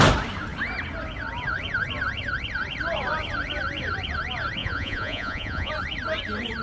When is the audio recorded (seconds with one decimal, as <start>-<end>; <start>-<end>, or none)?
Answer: 0.0-4.6; 5.7-6.6

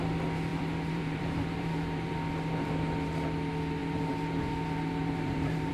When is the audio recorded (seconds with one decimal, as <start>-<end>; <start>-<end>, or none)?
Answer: 0.0-0.5; 2.1-3.8

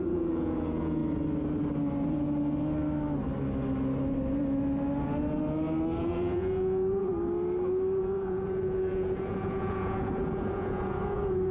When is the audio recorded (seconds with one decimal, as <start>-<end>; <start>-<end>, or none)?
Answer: 1.0-6.0; 7.1-8.0